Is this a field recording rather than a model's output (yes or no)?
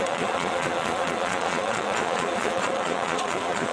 no